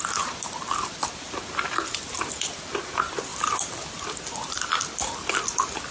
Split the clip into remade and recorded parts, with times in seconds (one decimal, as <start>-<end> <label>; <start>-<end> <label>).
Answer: 0.0-5.9 recorded